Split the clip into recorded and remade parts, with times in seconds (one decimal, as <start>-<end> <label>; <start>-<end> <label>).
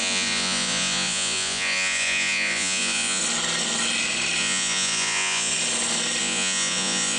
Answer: 0.0-3.2 remade; 3.2-4.4 recorded; 4.4-5.5 remade; 5.5-6.2 recorded; 6.2-7.2 remade